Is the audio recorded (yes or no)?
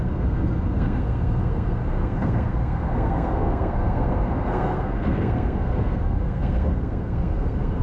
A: no